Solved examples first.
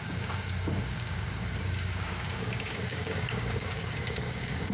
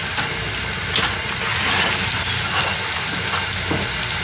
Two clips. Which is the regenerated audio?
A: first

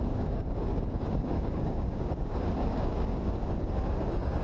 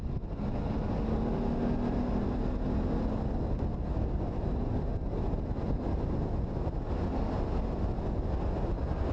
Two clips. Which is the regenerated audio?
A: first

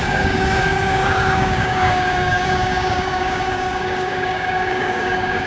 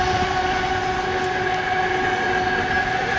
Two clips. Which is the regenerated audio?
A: first